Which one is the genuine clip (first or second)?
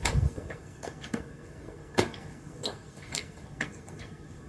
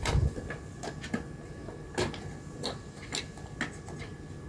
second